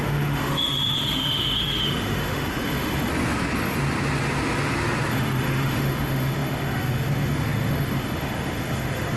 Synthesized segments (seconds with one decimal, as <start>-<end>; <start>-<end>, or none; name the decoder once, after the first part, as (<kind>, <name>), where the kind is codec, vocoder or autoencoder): 0.0-3.1 (autoencoder, DAC-VAE); 5.1-9.2